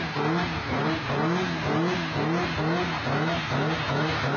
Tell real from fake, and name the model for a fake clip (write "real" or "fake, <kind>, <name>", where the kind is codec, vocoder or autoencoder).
real